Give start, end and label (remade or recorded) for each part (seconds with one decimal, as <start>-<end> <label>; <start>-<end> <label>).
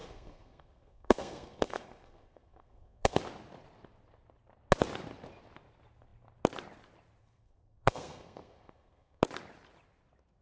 0.0-3.2 remade; 3.2-7.2 recorded; 7.2-9.2 remade; 9.2-10.4 recorded